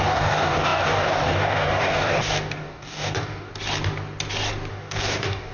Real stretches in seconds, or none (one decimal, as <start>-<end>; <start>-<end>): 3.5-4.7